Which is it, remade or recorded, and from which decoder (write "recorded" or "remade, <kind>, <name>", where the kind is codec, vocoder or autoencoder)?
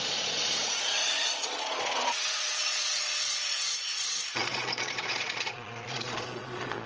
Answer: remade, vocoder, Vocos